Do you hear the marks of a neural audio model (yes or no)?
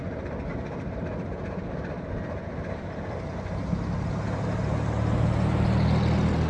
no